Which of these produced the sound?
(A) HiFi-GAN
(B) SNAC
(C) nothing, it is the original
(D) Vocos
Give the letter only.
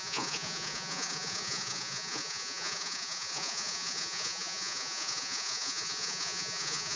D